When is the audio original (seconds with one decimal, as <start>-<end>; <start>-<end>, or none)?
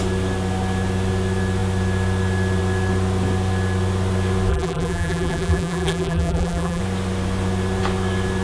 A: 0.0-4.5; 6.8-8.4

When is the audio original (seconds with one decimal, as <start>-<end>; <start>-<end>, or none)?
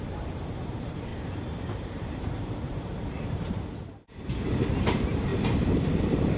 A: none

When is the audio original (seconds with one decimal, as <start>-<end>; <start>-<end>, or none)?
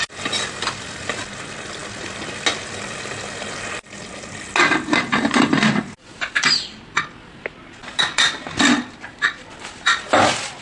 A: 0.0-10.6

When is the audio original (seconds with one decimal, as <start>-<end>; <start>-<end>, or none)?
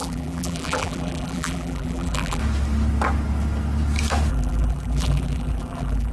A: 2.4-4.3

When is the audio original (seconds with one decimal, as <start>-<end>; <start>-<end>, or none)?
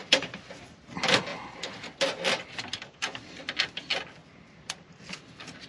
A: 0.8-1.3; 2.6-4.2; 4.9-5.7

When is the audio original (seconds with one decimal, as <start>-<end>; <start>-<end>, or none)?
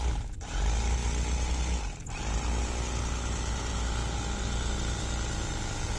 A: 0.0-6.0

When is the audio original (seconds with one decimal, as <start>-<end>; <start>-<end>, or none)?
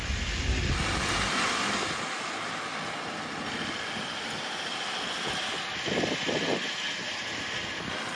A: 0.0-8.2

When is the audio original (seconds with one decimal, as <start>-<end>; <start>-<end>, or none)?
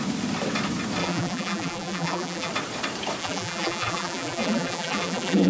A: 0.0-1.0; 2.5-3.2